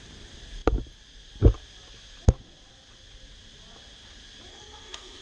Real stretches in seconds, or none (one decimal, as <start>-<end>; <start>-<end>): 0.0-4.5